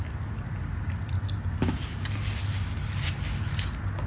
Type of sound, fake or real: real